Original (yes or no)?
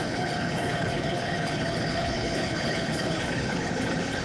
no